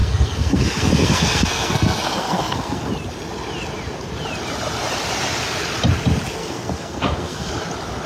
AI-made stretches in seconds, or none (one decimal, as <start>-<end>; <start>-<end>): 0.0-2.9; 6.4-7.5